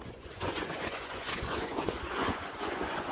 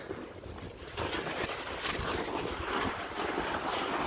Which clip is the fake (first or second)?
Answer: first